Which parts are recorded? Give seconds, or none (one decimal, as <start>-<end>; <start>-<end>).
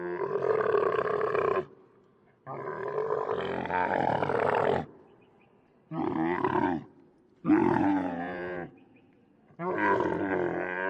0.0-7.6; 9.1-10.9